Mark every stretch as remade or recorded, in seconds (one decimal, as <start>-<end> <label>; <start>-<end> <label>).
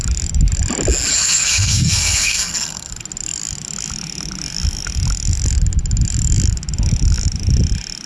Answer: 0.0-1.1 recorded; 1.1-2.9 remade; 2.9-8.1 recorded